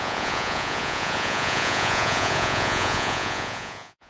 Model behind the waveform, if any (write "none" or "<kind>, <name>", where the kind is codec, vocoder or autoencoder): vocoder, Vocos